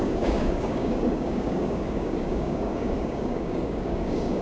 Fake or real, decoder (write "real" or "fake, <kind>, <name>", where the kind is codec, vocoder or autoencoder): fake, codec, DAC